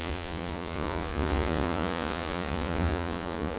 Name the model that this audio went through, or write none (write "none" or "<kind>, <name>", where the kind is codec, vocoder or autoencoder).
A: vocoder, Vocos